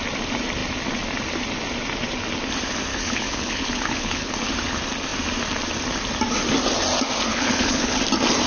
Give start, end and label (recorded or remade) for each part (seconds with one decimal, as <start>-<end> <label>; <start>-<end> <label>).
0.0-2.9 recorded; 2.9-4.5 remade; 4.5-7.3 recorded; 7.3-8.0 remade; 8.0-8.5 recorded

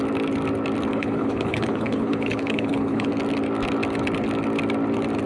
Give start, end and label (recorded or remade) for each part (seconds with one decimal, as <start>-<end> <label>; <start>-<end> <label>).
0.0-0.9 recorded; 0.9-3.1 remade; 3.1-5.3 recorded

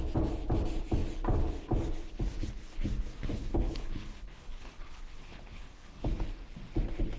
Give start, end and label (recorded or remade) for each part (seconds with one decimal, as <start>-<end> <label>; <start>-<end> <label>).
0.0-3.4 recorded; 3.4-6.3 remade; 6.3-7.2 recorded